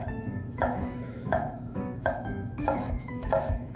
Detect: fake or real fake